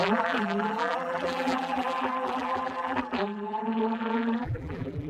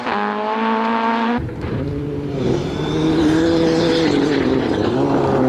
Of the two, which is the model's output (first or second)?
first